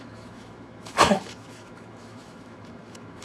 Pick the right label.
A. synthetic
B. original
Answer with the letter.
A